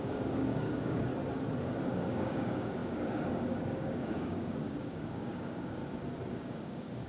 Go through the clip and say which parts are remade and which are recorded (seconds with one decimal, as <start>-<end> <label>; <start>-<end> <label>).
0.0-1.1 remade; 1.1-1.9 recorded; 1.9-5.8 remade; 5.8-6.4 recorded; 6.4-7.1 remade